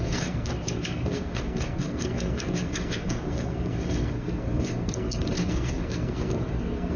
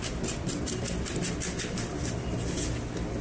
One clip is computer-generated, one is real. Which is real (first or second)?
second